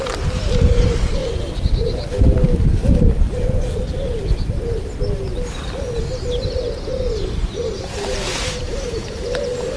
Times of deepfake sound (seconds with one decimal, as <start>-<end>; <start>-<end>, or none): 0.0-1.2; 2.3-2.8; 6.1-9.8